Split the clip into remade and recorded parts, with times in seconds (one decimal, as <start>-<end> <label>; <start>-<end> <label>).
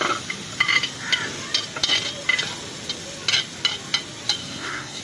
0.0-4.4 recorded; 4.4-5.0 remade